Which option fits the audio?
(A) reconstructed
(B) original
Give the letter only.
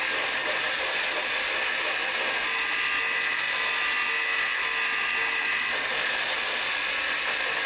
B